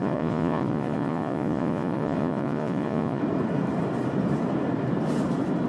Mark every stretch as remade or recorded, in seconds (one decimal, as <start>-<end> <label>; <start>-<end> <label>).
0.0-3.2 remade; 3.2-5.7 recorded